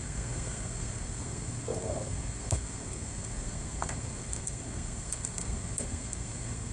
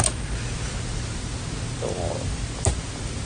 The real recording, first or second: second